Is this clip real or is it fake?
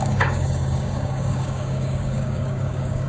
fake